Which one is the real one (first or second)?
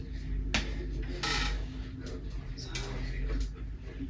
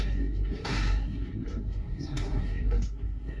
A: first